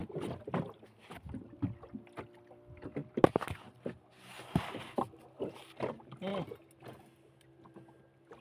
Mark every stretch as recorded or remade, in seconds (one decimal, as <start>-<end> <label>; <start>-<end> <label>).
0.0-8.4 recorded

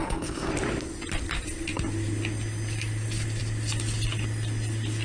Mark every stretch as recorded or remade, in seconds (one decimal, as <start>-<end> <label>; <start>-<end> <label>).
0.0-0.5 remade; 0.5-5.0 recorded

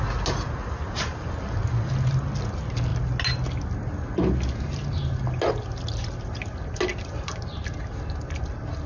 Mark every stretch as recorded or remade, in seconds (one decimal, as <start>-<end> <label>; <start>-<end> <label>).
0.0-8.9 recorded